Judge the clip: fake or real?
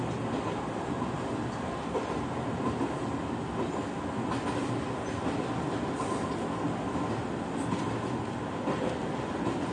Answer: real